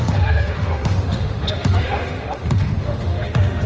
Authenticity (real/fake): fake